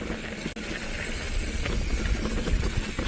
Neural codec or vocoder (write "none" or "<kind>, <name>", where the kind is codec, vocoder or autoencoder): none